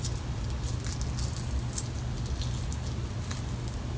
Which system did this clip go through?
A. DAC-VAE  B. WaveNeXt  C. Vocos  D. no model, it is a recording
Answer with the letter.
D